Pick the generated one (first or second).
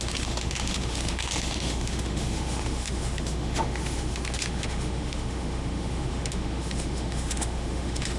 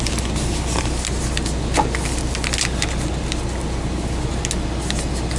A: first